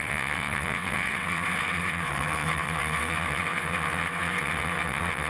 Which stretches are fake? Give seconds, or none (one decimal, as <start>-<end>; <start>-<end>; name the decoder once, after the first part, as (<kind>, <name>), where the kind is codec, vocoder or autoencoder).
0.0-5.3 (vocoder, WaveNeXt)